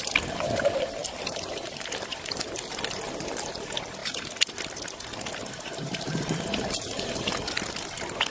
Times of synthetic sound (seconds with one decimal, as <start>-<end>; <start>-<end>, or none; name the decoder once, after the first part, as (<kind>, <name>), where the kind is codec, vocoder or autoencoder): none